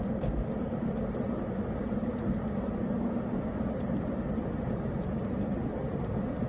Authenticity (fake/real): real